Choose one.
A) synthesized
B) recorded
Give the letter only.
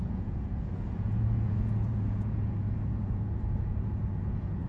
A